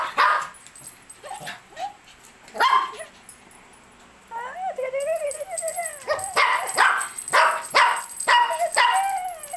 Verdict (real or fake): real